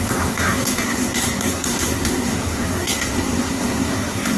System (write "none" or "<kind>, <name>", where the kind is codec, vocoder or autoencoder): codec, SNAC